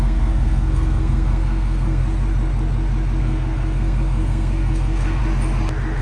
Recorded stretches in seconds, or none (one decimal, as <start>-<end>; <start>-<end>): 2.0-3.2; 5.2-6.0